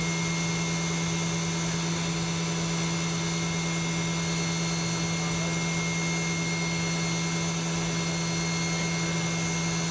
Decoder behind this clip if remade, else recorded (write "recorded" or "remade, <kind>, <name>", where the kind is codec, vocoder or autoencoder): recorded